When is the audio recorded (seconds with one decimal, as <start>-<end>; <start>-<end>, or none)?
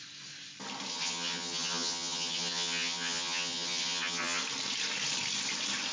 0.0-0.9; 4.4-5.9